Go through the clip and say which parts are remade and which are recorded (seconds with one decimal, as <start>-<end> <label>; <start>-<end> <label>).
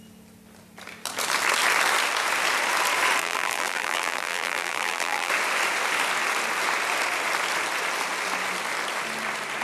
0.0-3.2 recorded; 3.2-5.3 remade; 5.3-9.6 recorded